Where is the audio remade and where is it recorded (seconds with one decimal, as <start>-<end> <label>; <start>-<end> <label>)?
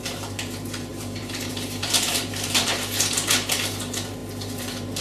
0.0-0.9 recorded; 0.9-2.7 remade; 2.7-5.0 recorded